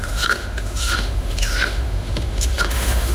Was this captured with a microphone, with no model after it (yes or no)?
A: no